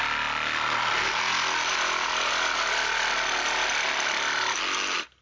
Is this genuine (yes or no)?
yes